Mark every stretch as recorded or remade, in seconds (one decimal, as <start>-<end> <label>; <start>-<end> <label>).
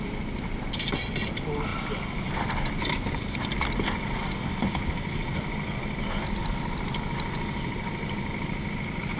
0.0-9.2 recorded